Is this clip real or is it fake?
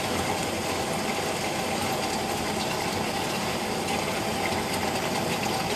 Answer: real